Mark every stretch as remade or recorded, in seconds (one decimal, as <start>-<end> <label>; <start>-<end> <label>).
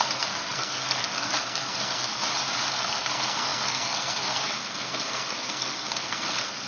0.0-2.1 remade; 2.1-2.7 recorded; 2.7-6.7 remade